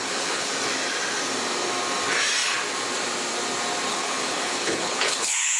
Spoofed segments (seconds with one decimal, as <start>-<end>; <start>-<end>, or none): 0.0-0.5; 3.9-5.6